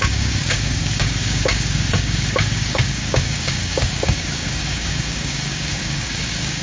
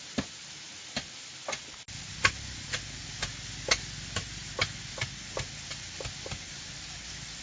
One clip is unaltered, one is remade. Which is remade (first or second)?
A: first